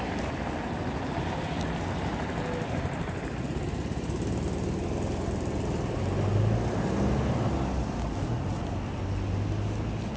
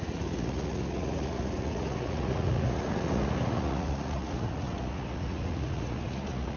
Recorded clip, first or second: first